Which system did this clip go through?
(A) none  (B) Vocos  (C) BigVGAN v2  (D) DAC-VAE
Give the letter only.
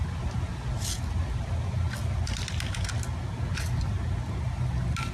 A